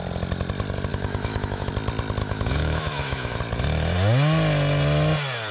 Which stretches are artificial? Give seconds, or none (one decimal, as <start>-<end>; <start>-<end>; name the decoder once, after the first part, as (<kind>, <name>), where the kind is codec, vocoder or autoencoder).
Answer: 0.9-1.7 (autoencoder, DAC-VAE); 2.2-3.4